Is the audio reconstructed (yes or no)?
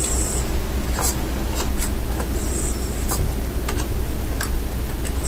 no